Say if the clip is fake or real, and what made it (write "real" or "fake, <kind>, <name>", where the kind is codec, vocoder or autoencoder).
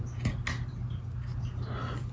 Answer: real